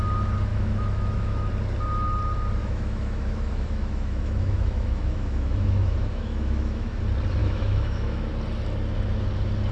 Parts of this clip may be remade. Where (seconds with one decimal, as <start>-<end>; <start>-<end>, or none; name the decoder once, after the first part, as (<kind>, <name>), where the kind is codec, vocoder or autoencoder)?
0.5-1.5 (autoencoder, DAC-VAE); 2.6-7.0; 7.4-8.3